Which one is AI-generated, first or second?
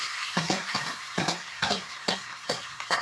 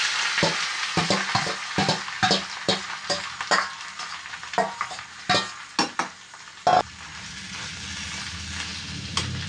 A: first